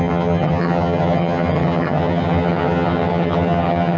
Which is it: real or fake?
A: fake